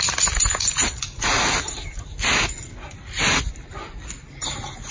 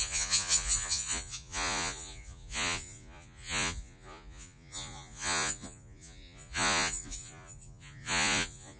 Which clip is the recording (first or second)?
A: first